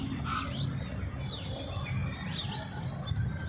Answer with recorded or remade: recorded